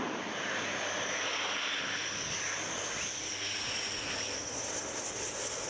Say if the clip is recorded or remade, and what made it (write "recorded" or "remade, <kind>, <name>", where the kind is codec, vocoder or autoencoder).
recorded